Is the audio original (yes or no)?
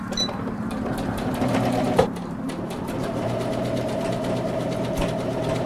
no